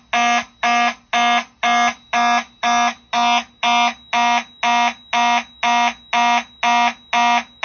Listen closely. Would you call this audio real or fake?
real